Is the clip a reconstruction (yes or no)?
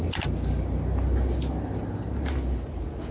no